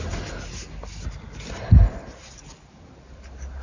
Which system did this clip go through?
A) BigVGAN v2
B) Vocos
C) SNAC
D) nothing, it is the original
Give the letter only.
D